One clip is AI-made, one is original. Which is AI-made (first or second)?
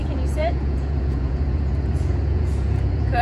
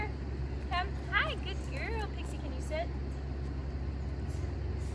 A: first